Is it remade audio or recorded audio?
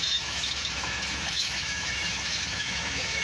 remade